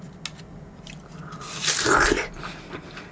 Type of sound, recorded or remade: recorded